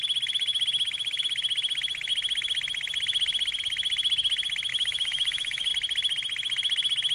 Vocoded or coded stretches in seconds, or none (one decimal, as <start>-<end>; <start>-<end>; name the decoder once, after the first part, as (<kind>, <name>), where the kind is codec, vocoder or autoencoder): 4.7-5.7 (autoencoder, DAC-VAE)